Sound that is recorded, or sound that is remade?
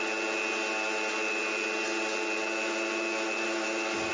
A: recorded